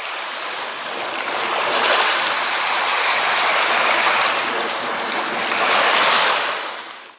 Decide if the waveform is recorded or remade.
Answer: remade